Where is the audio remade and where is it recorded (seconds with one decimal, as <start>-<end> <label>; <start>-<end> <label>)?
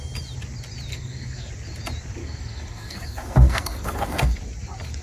0.0-0.9 recorded; 0.9-1.5 remade; 1.5-2.2 recorded; 2.2-4.4 remade; 4.4-5.0 recorded